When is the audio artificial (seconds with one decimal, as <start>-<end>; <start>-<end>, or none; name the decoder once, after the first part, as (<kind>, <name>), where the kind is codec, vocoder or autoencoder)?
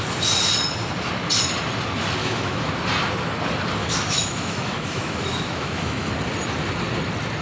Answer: 2.2-2.7 (autoencoder, DAC-VAE); 3.8-6.1